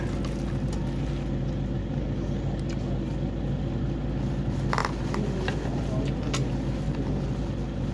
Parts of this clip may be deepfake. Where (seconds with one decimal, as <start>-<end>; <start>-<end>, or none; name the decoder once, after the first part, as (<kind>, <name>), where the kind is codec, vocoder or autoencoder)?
none